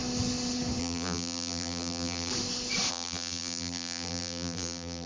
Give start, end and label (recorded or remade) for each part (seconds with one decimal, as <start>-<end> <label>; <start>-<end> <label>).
0.0-0.8 recorded; 0.8-2.3 remade; 2.3-2.9 recorded; 2.9-5.1 remade